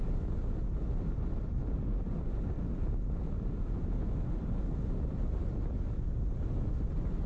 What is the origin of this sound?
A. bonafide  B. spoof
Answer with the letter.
A